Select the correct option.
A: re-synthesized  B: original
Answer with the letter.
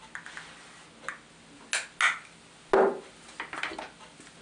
B